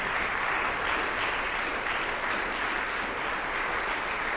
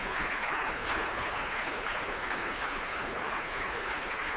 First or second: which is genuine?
first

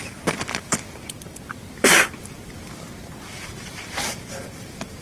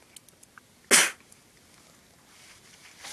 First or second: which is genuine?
second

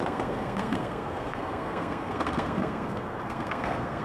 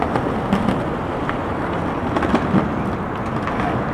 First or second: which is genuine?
second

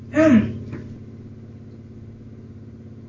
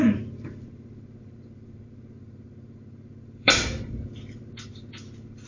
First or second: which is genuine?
first